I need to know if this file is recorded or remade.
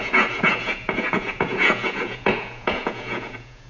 remade